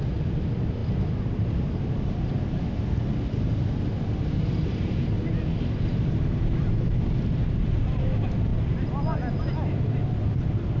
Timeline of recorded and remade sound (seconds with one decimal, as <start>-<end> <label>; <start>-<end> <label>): 0.0-10.8 recorded